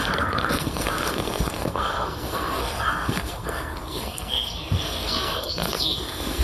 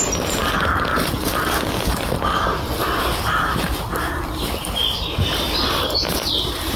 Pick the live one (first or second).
second